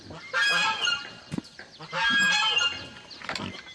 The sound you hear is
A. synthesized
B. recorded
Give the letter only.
B